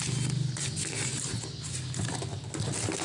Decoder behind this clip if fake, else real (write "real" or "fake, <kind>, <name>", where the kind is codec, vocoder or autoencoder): real